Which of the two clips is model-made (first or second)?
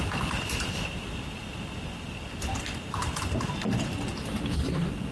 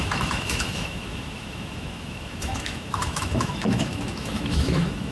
second